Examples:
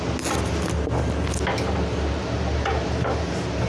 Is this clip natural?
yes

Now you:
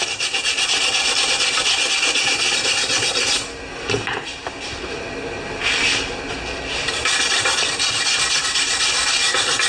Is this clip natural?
yes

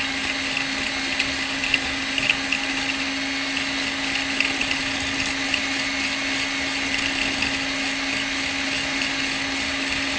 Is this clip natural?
yes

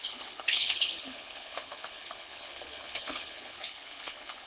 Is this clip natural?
no